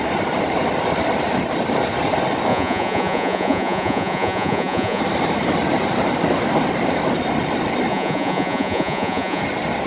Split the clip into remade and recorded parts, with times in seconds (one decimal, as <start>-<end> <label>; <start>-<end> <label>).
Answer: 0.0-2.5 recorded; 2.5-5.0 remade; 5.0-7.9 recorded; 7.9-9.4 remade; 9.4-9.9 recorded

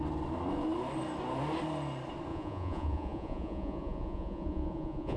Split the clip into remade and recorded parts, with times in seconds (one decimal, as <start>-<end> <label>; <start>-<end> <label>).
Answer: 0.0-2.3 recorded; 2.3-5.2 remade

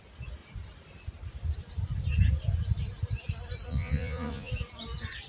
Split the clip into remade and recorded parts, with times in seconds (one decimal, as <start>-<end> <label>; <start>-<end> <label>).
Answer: 0.0-3.7 recorded; 3.7-4.5 remade; 4.5-5.3 recorded

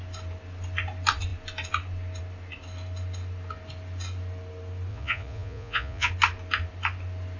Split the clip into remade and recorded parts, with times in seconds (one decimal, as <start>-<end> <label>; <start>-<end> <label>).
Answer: 0.0-4.9 recorded; 4.9-6.1 remade; 6.1-7.4 recorded